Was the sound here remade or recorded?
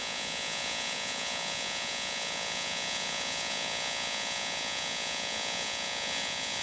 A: remade